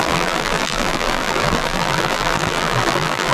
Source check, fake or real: fake